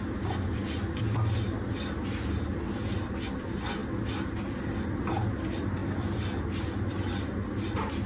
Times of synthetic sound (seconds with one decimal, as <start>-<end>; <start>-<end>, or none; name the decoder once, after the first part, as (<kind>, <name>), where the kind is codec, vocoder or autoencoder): none